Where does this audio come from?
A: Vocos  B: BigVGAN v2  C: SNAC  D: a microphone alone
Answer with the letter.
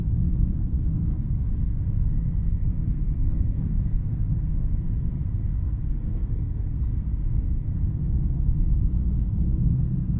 C